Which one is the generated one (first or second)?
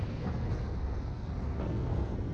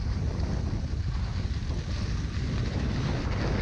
first